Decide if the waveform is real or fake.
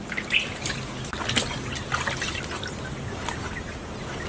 real